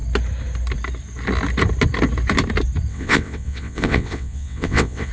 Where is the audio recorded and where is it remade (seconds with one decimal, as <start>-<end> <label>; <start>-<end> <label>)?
0.0-2.9 recorded; 2.9-5.1 remade